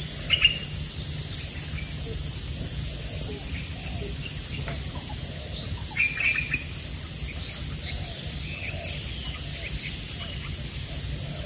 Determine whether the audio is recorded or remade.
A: recorded